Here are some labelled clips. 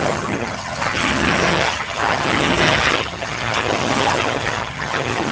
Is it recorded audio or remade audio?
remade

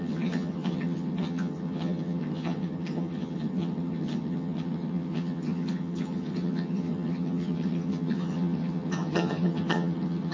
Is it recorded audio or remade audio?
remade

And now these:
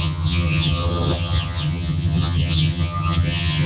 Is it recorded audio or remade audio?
remade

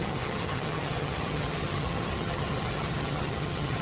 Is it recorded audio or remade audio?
remade